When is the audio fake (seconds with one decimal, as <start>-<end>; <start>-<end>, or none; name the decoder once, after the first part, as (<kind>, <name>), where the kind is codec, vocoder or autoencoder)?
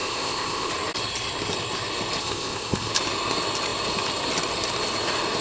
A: 0.0-0.7 (codec, ZipCodec); 2.2-2.9